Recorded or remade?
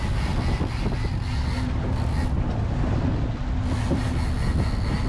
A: recorded